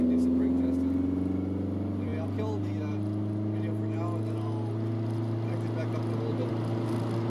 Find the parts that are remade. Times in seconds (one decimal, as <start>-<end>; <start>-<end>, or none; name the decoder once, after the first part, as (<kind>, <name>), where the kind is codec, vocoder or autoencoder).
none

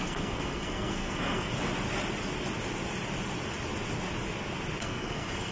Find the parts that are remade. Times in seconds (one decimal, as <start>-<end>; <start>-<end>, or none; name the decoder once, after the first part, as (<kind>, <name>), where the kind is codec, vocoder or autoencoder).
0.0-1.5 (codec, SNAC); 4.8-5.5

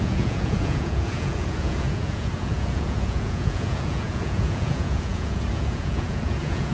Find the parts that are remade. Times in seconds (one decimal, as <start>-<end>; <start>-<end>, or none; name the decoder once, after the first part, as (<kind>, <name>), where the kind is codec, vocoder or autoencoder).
0.0-6.7 (vocoder, Vocos)

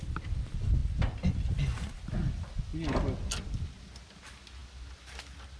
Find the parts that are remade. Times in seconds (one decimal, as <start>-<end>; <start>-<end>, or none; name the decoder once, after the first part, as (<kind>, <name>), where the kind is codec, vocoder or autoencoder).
none

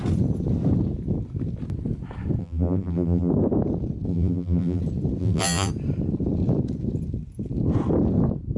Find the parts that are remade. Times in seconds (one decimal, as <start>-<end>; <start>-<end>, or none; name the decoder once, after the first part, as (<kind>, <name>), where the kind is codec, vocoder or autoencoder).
2.4-3.3 (vocoder, BigVGAN v2); 4.1-4.8; 5.2-5.7

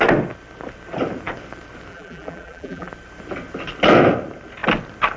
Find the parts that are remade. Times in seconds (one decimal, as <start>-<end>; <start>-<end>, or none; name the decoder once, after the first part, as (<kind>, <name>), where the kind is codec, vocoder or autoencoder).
1.9-2.9 (vocoder, BigVGAN v2)

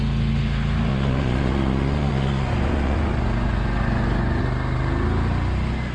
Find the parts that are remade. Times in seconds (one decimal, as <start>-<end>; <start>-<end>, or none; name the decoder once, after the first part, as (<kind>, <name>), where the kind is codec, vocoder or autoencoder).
0.9-4.4 (vocoder, Vocos)

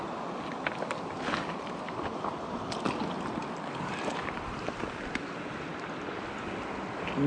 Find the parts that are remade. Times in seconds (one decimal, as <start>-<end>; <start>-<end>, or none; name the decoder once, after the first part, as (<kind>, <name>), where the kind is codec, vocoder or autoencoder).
none